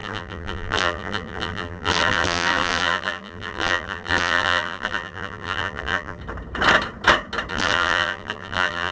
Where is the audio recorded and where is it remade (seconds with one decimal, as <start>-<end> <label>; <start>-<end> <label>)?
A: 0.0-6.2 remade; 6.2-7.5 recorded; 7.5-8.9 remade